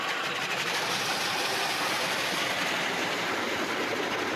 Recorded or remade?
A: remade